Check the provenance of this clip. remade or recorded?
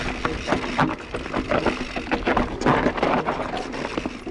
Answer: recorded